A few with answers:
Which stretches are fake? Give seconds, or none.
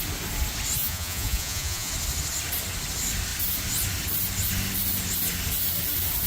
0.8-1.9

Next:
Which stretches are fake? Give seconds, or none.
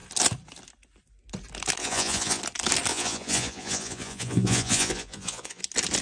1.8-2.4; 2.9-5.6